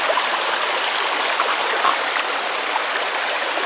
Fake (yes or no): no